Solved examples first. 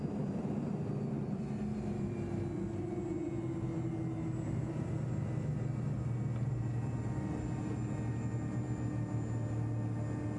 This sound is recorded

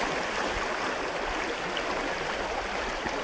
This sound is recorded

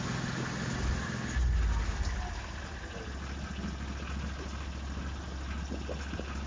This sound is recorded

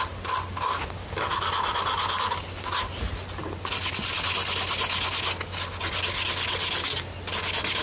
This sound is recorded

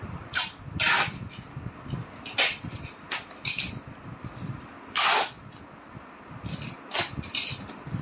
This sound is recorded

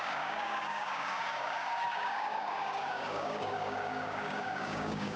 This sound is remade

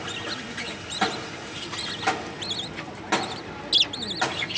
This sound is recorded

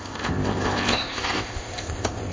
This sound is remade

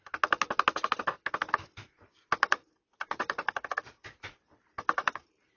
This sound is recorded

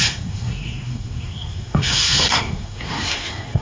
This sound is remade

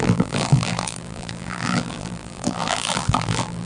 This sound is remade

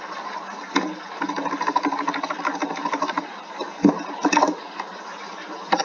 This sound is recorded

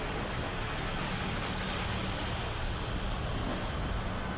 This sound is recorded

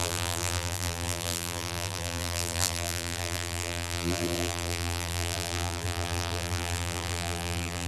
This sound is remade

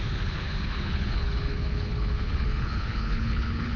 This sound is remade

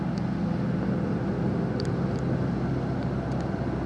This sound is recorded